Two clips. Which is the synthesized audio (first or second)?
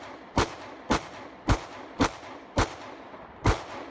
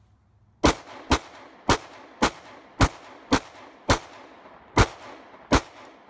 first